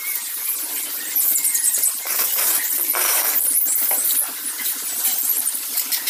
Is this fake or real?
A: fake